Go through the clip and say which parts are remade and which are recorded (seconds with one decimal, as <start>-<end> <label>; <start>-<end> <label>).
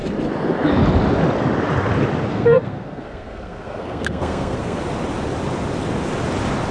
0.0-2.3 recorded; 2.3-4.8 remade; 4.8-6.7 recorded